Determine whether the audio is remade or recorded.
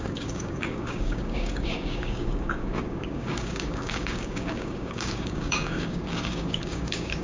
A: remade